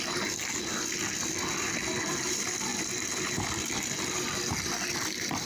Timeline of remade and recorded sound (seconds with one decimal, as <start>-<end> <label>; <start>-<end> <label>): 0.0-4.7 recorded; 4.7-5.5 remade

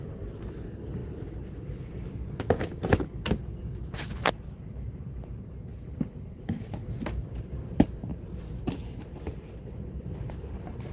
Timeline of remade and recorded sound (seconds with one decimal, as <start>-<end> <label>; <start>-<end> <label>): 0.0-1.0 remade; 1.0-3.8 recorded; 3.8-10.9 remade

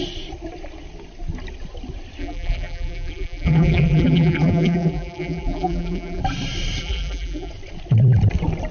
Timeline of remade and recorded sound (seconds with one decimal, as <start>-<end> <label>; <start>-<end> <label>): 0.0-2.2 recorded; 2.2-6.2 remade; 6.2-6.8 recorded; 6.8-7.5 remade; 7.5-8.7 recorded

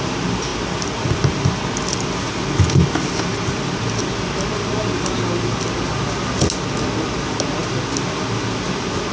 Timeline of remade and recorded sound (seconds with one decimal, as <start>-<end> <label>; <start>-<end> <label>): 0.0-9.1 recorded

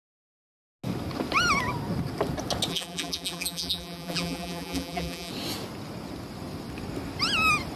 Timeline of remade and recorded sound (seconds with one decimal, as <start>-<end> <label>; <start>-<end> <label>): 0.0-2.7 recorded; 2.7-5.3 remade; 5.3-7.8 recorded

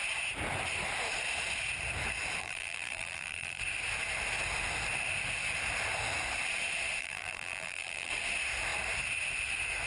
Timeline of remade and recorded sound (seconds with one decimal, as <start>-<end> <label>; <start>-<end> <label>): 0.0-2.4 recorded; 2.4-3.6 remade; 3.6-7.0 recorded; 7.0-8.1 remade; 8.1-9.9 recorded

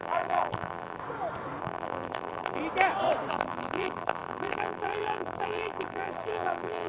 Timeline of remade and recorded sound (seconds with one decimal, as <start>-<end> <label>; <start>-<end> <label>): 0.0-1.0 remade; 1.0-1.6 recorded; 1.6-2.6 remade; 2.6-3.3 recorded; 3.3-6.9 remade